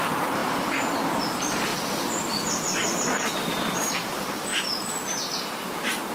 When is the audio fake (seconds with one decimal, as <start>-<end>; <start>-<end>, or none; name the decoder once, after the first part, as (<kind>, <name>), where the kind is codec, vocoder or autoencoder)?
0.0-1.7 (vocoder, BigVGAN v2); 3.5-4.5